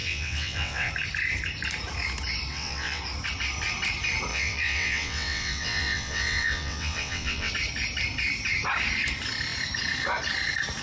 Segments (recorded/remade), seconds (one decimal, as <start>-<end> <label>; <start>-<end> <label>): 0.0-0.9 remade; 0.9-2.5 recorded; 2.5-3.0 remade; 3.0-4.3 recorded; 4.3-7.5 remade; 7.5-10.8 recorded